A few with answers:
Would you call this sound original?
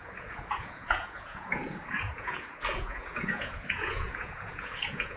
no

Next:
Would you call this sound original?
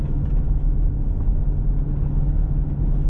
yes